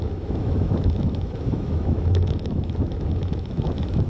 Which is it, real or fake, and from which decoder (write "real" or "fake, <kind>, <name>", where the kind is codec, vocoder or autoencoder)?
fake, autoencoder, DAC-VAE